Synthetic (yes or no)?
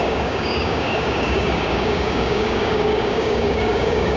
yes